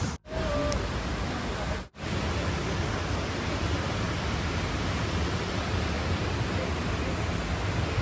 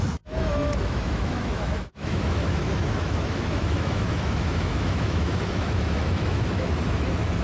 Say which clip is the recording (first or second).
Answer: first